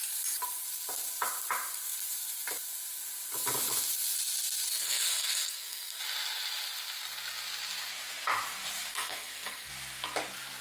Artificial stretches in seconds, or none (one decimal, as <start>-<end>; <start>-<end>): 4.7-6.0; 8.9-9.7